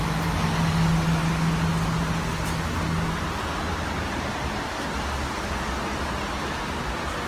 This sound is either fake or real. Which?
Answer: real